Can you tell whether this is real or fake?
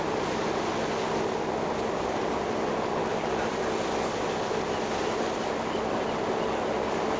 real